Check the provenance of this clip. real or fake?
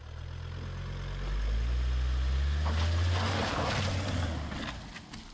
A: real